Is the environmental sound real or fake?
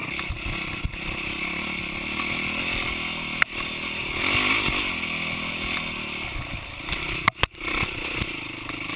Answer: real